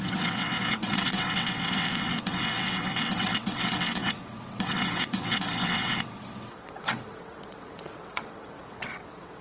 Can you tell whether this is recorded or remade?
remade